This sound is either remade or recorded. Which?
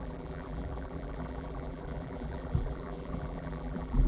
remade